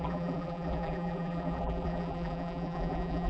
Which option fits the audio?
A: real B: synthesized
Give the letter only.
B